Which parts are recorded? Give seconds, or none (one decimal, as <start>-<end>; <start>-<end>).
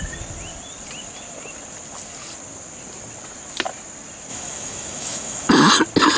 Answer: 0.0-4.3; 5.5-6.2